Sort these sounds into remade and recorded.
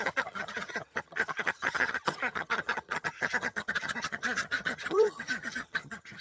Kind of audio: remade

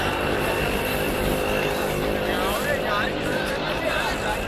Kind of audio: recorded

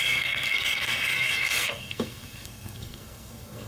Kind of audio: remade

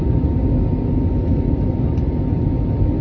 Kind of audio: recorded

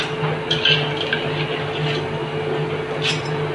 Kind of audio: recorded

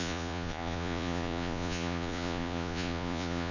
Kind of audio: remade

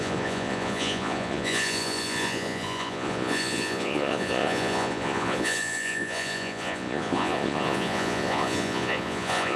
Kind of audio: remade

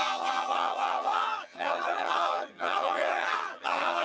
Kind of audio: remade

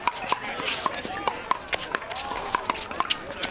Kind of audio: recorded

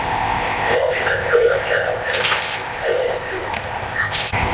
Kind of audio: remade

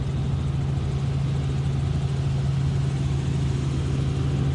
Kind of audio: recorded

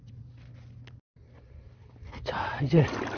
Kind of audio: recorded